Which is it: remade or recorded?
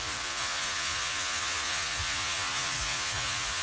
remade